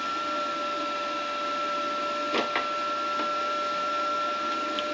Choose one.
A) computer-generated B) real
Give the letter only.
B